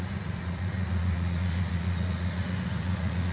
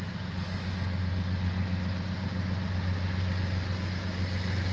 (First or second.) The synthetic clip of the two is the first